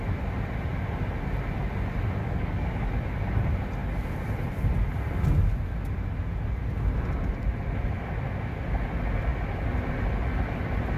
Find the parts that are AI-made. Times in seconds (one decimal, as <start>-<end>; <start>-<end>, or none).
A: 2.2-2.9